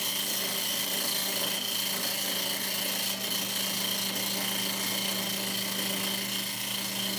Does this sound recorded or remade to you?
recorded